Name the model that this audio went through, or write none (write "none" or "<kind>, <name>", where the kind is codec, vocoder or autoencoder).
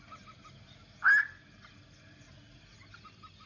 none